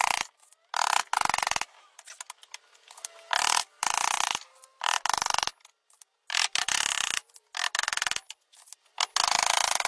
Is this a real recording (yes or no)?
yes